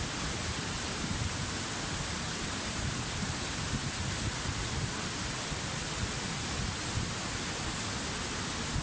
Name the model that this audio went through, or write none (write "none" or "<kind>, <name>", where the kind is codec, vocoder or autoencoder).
none